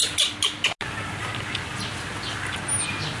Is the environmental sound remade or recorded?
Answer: recorded